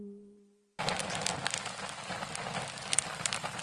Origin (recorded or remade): recorded